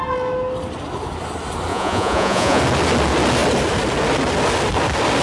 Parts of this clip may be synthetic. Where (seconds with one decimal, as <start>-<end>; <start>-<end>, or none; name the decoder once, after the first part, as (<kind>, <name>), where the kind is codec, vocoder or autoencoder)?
1.7-2.6 (vocoder, Vocos)